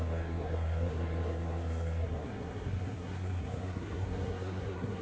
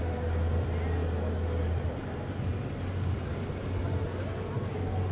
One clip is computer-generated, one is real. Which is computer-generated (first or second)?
first